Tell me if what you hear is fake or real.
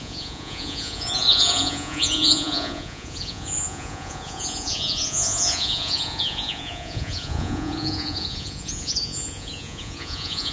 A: fake